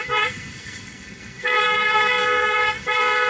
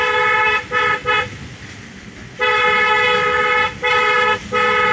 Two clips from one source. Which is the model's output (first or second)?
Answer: first